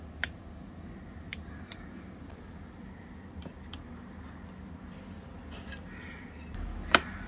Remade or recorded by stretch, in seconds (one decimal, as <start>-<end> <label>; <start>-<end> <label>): 0.0-7.3 recorded